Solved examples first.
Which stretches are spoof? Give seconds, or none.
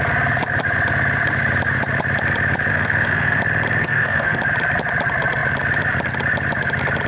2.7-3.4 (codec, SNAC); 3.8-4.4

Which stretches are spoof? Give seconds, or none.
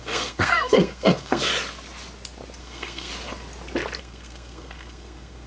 0.0-1.5 (codec, SNAC); 2.6-3.1; 4.0-5.5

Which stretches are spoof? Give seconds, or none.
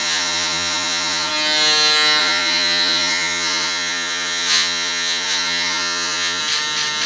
0.0-1.3 (vocoder, Vocos); 2.2-6.4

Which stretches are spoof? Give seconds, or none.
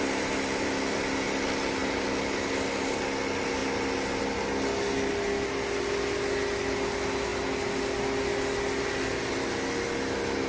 none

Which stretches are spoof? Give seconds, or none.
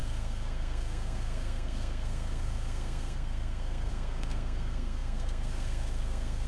0.0-6.5 (codec, SNAC)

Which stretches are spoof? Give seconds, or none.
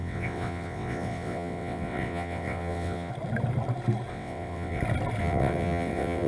0.0-3.1 (vocoder, WaveNeXt); 4.1-4.8; 5.2-6.3